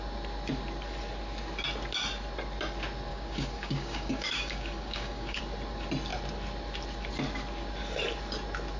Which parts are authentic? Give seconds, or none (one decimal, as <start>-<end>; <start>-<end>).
0.0-3.1; 5.4-8.8

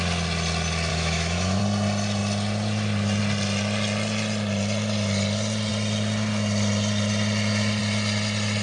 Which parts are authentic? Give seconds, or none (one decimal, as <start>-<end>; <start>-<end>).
0.0-0.9; 1.6-8.6

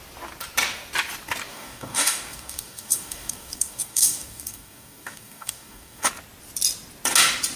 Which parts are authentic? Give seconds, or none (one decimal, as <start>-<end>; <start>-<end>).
0.0-1.5; 6.1-7.6

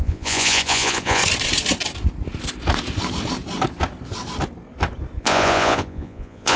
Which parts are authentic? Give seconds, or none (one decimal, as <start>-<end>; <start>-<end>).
1.2-5.2

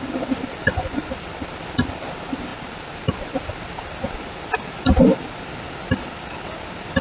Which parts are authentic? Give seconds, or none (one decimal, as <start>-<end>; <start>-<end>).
0.0-0.6; 1.1-7.0

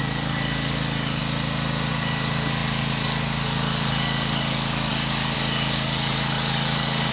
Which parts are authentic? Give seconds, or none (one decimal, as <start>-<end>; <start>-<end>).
1.2-1.9

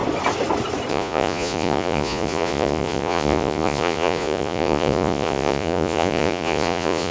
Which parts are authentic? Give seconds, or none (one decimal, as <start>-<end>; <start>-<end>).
0.0-0.9

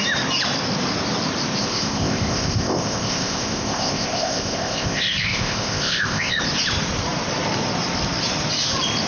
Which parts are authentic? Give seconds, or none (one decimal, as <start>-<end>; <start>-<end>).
0.0-1.6; 6.4-9.1